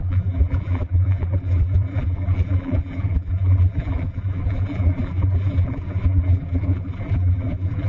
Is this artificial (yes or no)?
yes